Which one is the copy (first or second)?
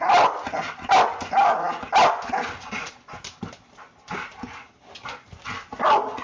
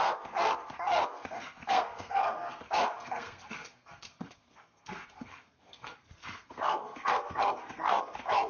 second